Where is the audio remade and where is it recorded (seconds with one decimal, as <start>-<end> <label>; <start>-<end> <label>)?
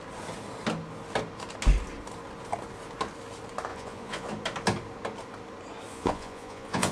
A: 0.0-3.7 recorded; 3.7-4.3 remade; 4.3-5.9 recorded; 5.9-6.9 remade